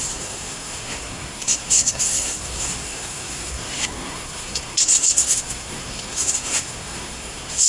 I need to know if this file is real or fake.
fake